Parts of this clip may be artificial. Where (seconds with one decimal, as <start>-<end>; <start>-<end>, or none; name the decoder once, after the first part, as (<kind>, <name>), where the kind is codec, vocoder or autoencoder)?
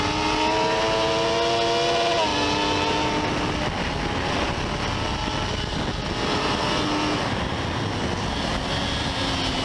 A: none